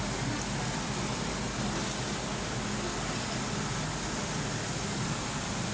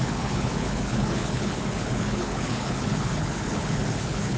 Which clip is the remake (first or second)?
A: second